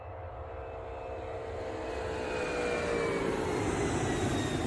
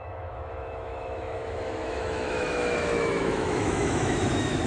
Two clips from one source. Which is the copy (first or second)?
second